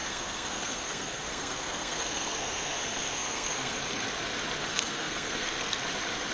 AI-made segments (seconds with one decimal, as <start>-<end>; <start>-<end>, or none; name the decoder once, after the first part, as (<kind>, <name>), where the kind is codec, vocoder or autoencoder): 0.0-3.8 (codec, SNAC); 4.6-5.8